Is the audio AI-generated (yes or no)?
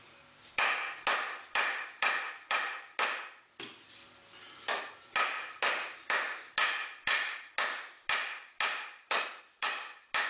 no